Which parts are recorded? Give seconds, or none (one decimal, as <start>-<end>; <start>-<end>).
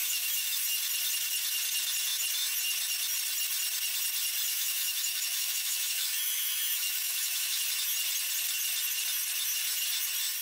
0.6-4.5; 7.6-10.4